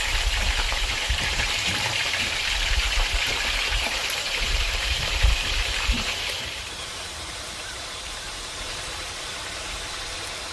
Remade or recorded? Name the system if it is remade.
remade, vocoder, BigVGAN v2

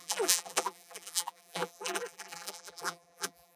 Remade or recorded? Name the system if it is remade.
remade, vocoder, BigVGAN v2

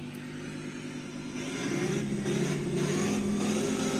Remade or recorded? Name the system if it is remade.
recorded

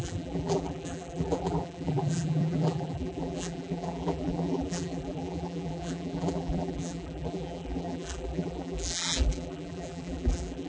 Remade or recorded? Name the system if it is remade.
remade, vocoder, BigVGAN v2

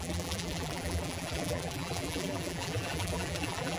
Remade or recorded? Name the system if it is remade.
remade, vocoder, BigVGAN v2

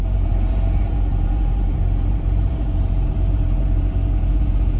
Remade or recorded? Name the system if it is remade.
remade, vocoder, BigVGAN v2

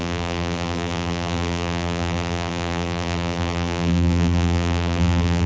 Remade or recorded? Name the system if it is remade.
remade, vocoder, BigVGAN v2